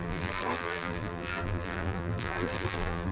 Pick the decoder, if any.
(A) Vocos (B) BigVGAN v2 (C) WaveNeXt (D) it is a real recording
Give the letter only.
B